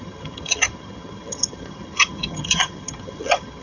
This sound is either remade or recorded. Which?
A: remade